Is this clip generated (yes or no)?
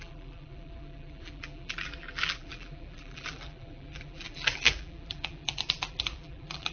yes